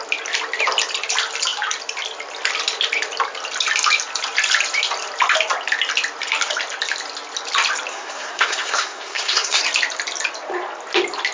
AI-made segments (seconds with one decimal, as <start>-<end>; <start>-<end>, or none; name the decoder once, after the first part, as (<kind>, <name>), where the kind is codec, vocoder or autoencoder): 7.9-9.6 (codec, SNAC)